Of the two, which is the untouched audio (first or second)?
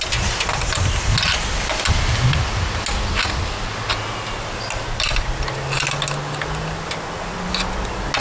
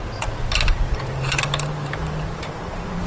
first